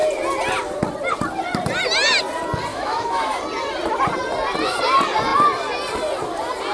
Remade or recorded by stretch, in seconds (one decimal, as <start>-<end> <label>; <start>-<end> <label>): 0.0-2.7 recorded; 2.7-3.4 remade; 3.4-6.7 recorded